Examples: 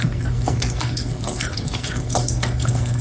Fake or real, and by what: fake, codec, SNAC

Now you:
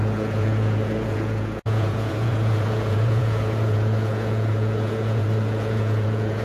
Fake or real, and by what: fake, vocoder, Vocos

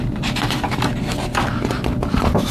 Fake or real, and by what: real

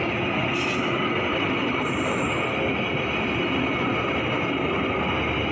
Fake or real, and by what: real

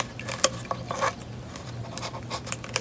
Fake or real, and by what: real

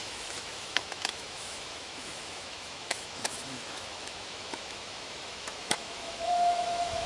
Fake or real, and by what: fake, autoencoder, DAC-VAE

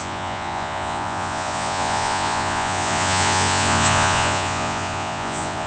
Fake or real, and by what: fake, vocoder, Vocos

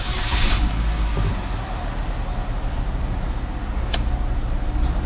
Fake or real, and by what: real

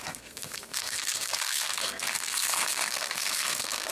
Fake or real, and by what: fake, codec, SNAC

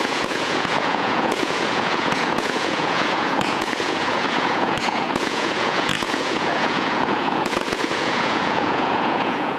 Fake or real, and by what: fake, vocoder, Vocos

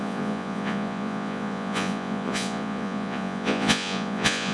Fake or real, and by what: fake, vocoder, Vocos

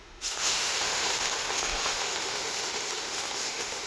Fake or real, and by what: fake, autoencoder, DAC-VAE